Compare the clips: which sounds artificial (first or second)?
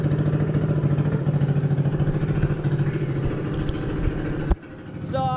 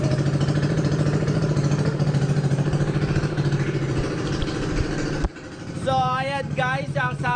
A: second